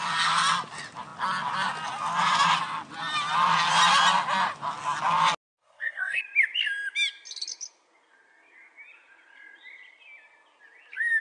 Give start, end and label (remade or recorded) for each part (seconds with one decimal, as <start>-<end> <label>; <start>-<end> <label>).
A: 0.0-5.6 recorded; 5.6-6.2 remade; 6.2-11.2 recorded